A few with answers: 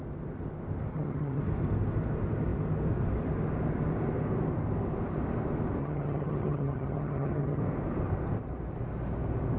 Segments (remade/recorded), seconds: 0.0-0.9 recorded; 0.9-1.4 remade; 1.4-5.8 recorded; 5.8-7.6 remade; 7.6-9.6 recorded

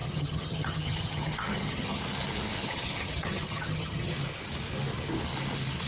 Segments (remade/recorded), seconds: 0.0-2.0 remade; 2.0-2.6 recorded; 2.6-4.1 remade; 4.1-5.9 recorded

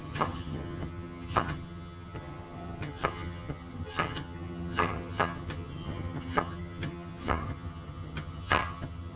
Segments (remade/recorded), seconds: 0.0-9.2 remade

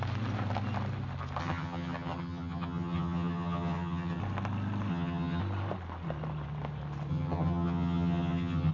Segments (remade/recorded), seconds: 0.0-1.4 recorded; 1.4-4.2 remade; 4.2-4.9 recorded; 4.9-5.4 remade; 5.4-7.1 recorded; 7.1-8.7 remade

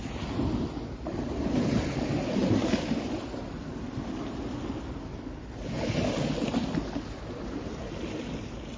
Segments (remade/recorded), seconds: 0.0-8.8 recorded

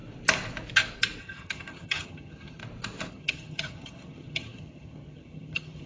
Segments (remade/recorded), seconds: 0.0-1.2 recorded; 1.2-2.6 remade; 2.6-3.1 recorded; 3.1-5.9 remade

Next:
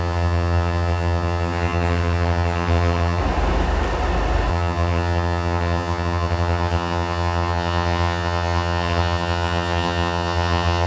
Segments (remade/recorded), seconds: 0.0-3.2 remade; 3.2-4.5 recorded; 4.5-10.9 remade